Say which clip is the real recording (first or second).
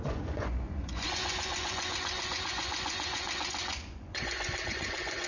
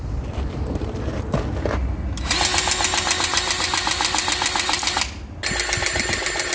second